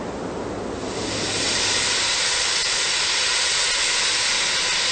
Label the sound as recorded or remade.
recorded